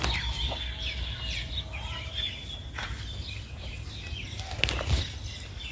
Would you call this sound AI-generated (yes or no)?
no